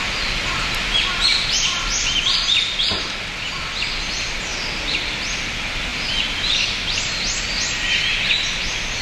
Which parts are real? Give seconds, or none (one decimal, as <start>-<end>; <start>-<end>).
0.0-4.5; 5.2-9.0